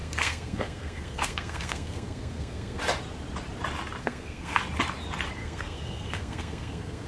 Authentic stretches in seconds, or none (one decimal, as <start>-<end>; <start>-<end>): 2.8-4.0; 4.6-5.4